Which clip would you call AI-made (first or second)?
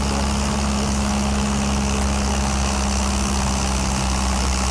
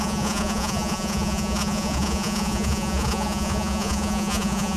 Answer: second